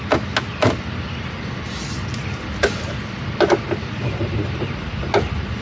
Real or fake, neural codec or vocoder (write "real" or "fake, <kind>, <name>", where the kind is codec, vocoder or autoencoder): real